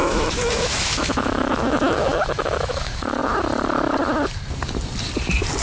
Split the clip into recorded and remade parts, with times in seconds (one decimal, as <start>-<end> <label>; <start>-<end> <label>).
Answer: 0.0-3.2 remade; 3.2-5.6 recorded